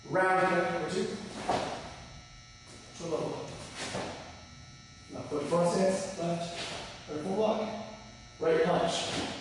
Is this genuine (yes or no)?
yes